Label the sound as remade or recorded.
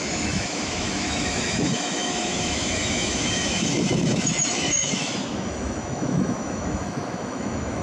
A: remade